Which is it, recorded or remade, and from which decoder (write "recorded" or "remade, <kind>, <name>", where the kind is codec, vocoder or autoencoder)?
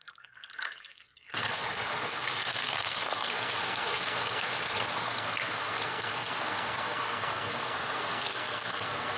remade, codec, SNAC